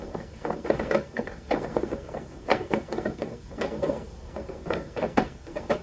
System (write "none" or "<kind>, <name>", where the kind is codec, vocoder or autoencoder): codec, SNAC